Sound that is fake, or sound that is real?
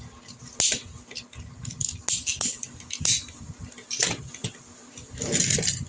real